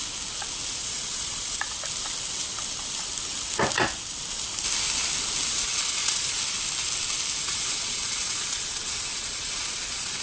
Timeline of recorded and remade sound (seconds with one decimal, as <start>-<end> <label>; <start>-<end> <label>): 0.0-0.8 recorded; 0.8-1.7 remade; 1.7-5.5 recorded; 5.5-6.4 remade; 6.4-7.4 recorded; 7.4-10.2 remade